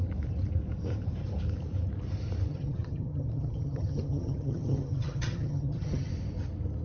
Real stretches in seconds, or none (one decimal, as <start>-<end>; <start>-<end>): 0.0-2.5; 6.1-6.8

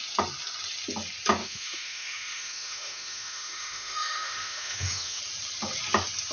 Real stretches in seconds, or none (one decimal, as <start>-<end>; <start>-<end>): 0.0-1.4; 5.2-6.3

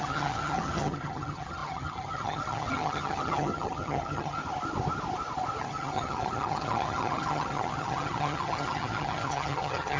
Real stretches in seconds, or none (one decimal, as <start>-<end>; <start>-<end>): 4.4-5.6

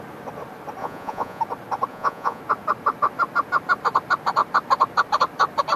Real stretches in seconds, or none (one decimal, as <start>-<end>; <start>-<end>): 0.0-0.8; 1.4-1.9; 2.4-5.8

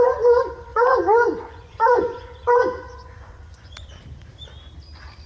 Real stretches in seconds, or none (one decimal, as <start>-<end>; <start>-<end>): 0.0-0.7; 3.9-5.3

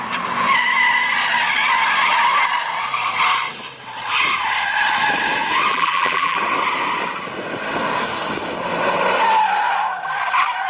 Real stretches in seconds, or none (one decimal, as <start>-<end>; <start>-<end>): 0.0-5.7; 6.4-10.7